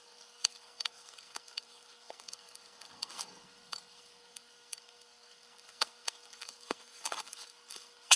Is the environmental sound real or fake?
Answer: fake